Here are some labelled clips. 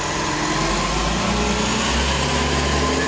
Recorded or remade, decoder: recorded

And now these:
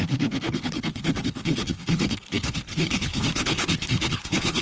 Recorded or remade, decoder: remade, codec, HILCodec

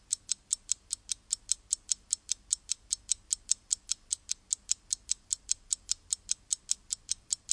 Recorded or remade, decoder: recorded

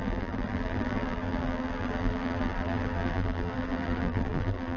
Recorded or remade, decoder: remade, vocoder, BigVGAN v2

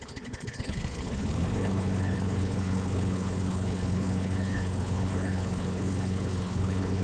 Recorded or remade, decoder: remade, codec, HILCodec